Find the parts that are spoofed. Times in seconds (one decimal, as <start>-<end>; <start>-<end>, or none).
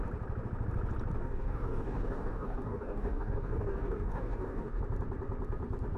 1.2-4.8